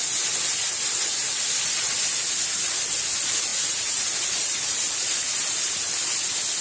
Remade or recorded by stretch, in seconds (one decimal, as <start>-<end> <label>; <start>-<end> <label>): 0.0-3.5 recorded; 3.5-5.8 remade; 5.8-6.6 recorded